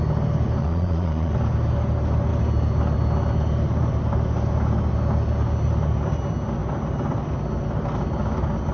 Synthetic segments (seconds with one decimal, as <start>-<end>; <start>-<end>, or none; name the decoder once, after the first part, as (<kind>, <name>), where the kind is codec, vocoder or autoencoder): 0.6-1.3 (vocoder, Vocos)

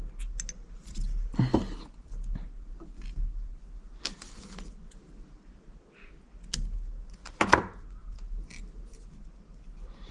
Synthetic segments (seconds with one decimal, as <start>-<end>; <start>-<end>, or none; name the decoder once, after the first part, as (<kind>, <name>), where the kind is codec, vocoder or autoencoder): none

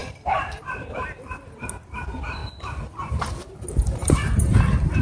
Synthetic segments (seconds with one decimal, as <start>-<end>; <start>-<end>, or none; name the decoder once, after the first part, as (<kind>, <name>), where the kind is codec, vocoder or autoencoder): 0.0-0.6 (vocoder, BigVGAN v2); 4.0-5.0